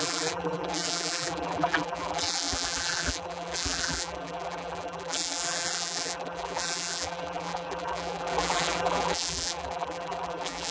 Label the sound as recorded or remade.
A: remade